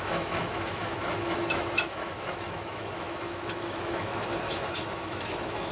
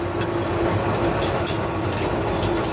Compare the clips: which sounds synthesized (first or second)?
first